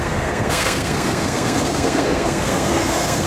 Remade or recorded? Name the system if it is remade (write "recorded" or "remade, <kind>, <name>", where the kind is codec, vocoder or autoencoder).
remade, codec, SNAC